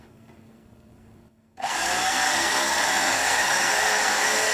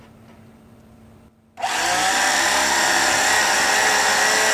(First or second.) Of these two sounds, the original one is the second